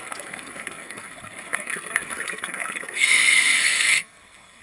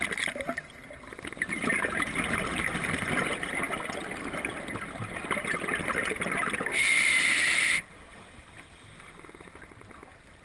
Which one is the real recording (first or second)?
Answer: second